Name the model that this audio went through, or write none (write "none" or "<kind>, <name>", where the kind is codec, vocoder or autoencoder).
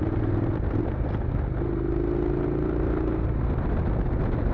none